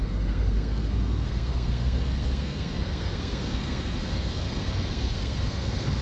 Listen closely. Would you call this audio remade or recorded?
remade